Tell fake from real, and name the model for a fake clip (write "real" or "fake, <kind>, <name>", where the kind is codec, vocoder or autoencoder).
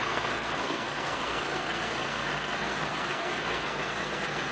fake, codec, SNAC